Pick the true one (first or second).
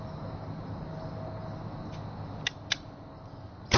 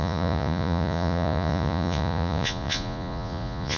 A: first